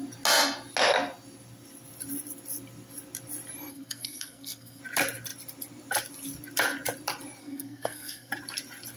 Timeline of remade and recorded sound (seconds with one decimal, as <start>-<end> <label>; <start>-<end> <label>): 0.0-3.7 recorded; 3.7-4.8 remade; 4.8-7.4 recorded; 7.4-8.3 remade; 8.3-9.0 recorded